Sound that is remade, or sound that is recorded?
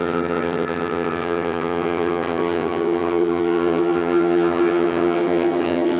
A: remade